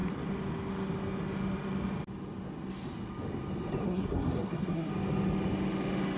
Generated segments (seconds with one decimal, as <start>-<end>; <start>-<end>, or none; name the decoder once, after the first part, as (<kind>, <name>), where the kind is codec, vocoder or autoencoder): 3.8-4.9 (codec, SNAC)